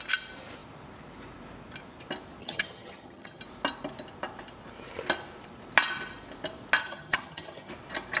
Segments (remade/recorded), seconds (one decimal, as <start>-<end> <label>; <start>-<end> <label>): 0.0-2.4 recorded; 2.4-3.4 remade; 3.4-6.8 recorded; 6.8-7.7 remade; 7.7-8.2 recorded